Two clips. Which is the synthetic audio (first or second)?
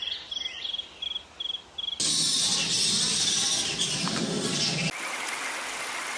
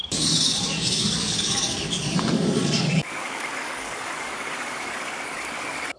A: second